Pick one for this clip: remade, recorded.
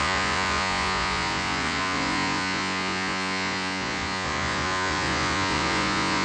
remade